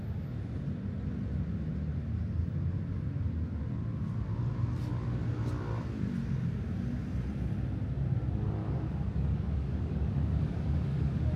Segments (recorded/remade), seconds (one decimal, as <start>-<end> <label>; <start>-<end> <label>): 0.0-8.6 recorded; 8.6-11.4 remade